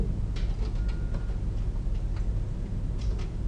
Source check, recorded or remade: recorded